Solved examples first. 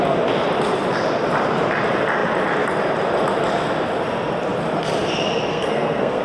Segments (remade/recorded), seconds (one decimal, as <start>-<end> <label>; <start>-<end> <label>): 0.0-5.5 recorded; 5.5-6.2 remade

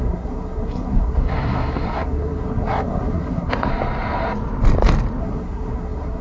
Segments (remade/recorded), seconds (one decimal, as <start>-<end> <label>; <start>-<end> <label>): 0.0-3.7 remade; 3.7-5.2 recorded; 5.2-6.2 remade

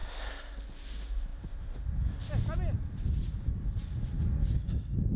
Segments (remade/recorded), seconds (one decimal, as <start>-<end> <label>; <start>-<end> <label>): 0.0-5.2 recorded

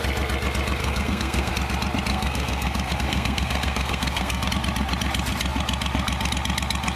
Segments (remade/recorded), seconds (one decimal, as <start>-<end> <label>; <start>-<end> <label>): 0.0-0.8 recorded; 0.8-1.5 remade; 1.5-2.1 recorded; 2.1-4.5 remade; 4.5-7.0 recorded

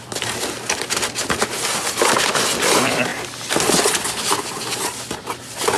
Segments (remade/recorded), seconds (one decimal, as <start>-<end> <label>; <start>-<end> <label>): 0.0-5.8 recorded

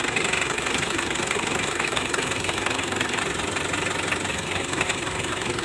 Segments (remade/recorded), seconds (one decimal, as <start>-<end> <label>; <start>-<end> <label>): 0.0-3.2 remade; 3.2-4.3 recorded; 4.3-5.6 remade